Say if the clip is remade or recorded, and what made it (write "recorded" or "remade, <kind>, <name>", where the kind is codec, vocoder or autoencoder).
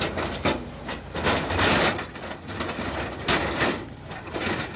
recorded